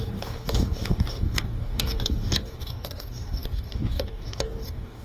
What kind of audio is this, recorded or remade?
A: remade